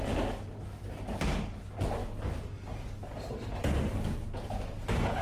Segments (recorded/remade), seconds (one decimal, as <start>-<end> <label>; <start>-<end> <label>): 0.0-5.2 recorded